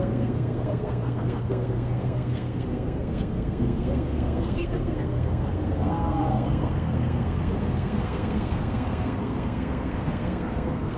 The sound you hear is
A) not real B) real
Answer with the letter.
A